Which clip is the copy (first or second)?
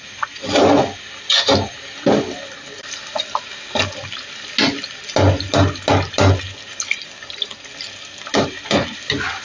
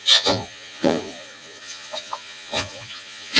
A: second